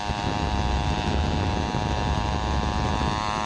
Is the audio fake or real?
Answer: real